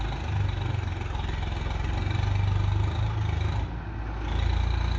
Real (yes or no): yes